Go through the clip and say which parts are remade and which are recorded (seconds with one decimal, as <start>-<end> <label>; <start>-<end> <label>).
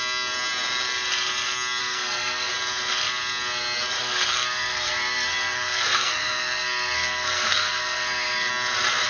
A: 0.0-1.8 recorded; 1.8-2.5 remade; 2.5-4.0 recorded; 4.0-8.5 remade; 8.5-9.1 recorded